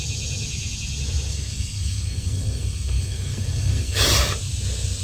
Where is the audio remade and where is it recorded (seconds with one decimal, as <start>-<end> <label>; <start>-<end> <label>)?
0.0-1.3 recorded; 1.3-4.0 remade; 4.0-5.0 recorded

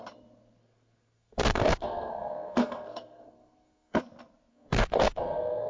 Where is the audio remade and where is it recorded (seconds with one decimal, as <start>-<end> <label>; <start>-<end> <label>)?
0.0-0.6 recorded; 0.6-4.0 remade; 4.0-4.5 recorded; 4.5-5.7 remade

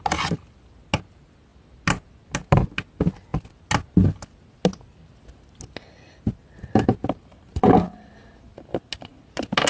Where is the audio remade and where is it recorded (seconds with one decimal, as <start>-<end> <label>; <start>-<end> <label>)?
0.0-9.7 recorded

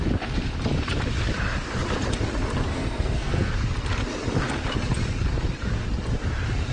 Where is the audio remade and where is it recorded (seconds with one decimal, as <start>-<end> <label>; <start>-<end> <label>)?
0.0-2.7 recorded; 2.7-3.5 remade; 3.5-6.7 recorded

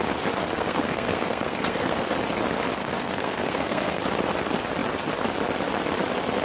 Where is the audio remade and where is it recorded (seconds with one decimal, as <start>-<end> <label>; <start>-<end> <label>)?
0.0-0.4 recorded; 0.4-2.1 remade; 2.1-2.8 recorded; 2.8-4.0 remade; 4.0-6.4 recorded

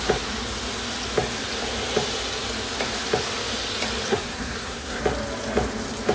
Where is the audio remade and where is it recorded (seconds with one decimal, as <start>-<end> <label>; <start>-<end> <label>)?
0.0-4.1 recorded; 4.1-5.0 remade; 5.0-6.1 recorded